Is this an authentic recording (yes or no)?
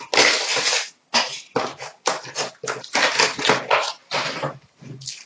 yes